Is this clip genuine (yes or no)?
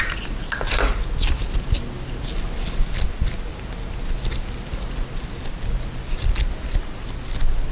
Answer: yes